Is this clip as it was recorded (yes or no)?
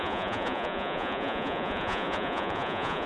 no